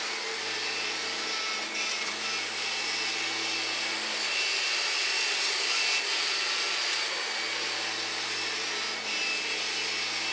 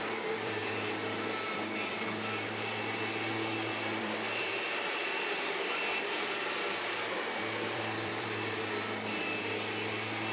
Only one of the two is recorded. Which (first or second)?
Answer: first